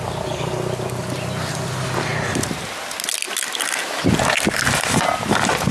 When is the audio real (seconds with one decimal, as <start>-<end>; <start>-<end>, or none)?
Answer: 0.0-5.7